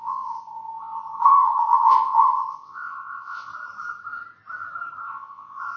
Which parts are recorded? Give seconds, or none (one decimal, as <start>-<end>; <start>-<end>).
3.5-5.0